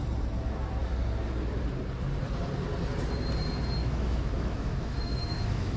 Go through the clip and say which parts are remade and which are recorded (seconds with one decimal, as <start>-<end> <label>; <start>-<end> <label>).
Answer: 0.0-3.8 recorded; 3.8-5.8 remade